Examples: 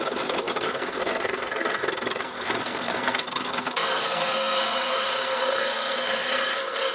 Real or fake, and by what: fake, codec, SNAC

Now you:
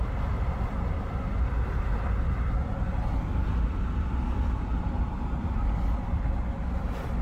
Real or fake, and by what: real